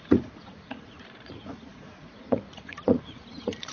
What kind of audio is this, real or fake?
fake